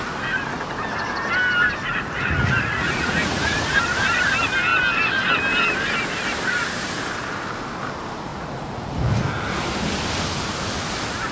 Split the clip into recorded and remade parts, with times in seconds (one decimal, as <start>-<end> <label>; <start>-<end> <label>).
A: 0.0-1.9 recorded; 1.9-3.8 remade; 3.8-8.3 recorded; 8.3-8.9 remade; 8.9-11.3 recorded